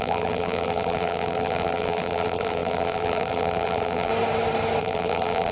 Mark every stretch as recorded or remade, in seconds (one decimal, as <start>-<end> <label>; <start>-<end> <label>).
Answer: 0.0-4.1 remade; 4.1-4.8 recorded; 4.8-5.5 remade